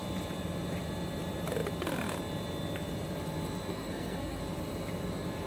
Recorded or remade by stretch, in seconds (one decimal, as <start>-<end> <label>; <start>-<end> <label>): 0.0-3.7 recorded; 3.7-4.4 remade; 4.4-5.5 recorded